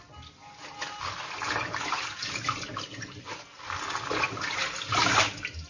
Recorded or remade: recorded